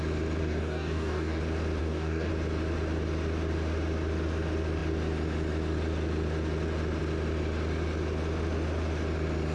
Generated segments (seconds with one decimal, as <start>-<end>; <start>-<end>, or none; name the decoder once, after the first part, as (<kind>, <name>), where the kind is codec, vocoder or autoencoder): 0.4-1.4 (codec, DAC); 1.8-2.3